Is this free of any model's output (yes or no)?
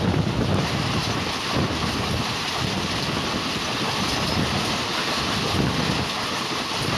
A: yes